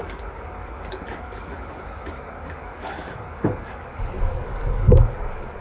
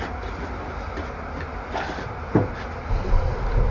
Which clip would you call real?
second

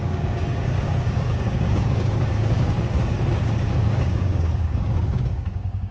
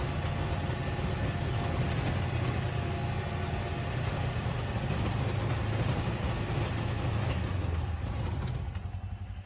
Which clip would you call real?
second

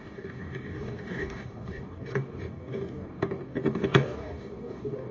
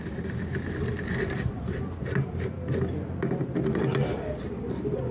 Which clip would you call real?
second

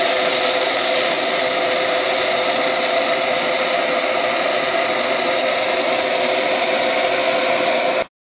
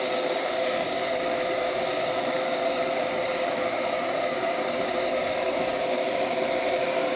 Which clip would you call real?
first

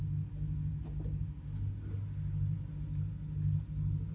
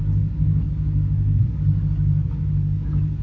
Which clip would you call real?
first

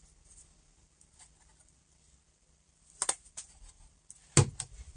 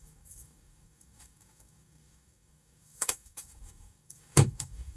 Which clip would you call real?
first